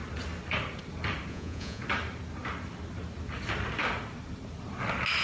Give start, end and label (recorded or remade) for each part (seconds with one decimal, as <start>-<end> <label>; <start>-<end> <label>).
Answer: 0.0-1.3 recorded; 1.3-1.8 remade; 1.8-5.2 recorded